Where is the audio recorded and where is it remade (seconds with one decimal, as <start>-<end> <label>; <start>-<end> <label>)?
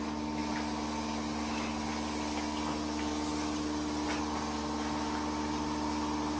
0.0-6.4 recorded